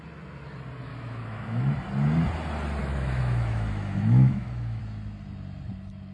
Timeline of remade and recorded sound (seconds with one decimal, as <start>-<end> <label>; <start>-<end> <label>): 0.0-0.9 recorded; 0.9-1.7 remade; 1.7-2.8 recorded; 2.8-4.8 remade; 4.8-6.1 recorded